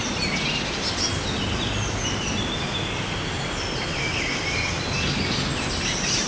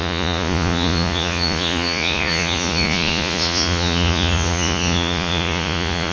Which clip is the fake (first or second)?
second